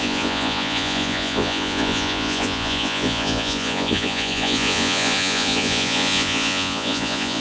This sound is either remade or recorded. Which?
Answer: remade